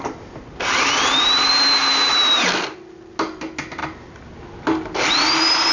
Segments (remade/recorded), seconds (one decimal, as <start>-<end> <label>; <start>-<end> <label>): 0.0-5.7 recorded